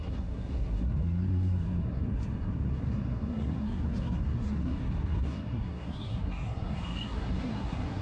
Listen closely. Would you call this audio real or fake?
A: fake